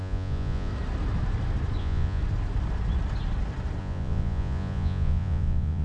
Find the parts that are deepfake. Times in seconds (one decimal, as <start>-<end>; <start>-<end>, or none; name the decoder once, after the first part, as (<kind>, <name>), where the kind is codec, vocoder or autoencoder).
0.0-0.7 (vocoder, Vocos); 1.8-2.2; 3.8-5.8